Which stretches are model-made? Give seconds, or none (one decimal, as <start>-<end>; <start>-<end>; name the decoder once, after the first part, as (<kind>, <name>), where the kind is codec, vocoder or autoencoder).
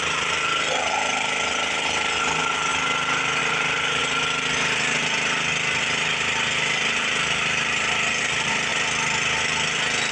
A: 0.0-2.7 (vocoder, BigVGAN v2); 3.4-4.0; 8.2-8.7